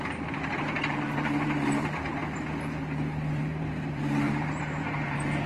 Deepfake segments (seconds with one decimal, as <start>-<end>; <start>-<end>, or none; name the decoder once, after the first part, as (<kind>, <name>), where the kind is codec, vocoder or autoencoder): 0.0-2.2 (vocoder, BigVGAN v2); 2.8-5.5